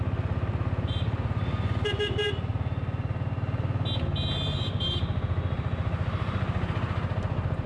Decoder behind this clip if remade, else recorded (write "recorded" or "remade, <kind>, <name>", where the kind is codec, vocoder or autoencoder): recorded